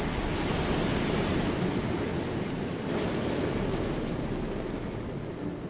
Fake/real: real